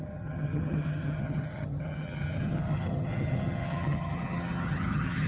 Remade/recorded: remade